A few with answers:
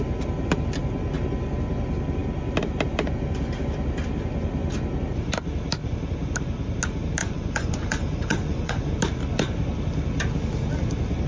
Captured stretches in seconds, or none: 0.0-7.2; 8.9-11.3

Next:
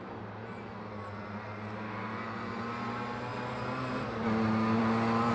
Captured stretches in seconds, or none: 0.0-5.3

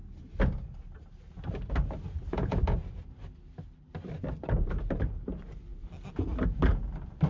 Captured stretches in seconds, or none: 0.0-2.3; 2.8-7.3

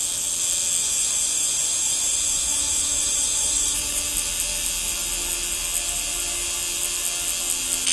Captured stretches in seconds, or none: 0.0-0.8; 4.0-7.9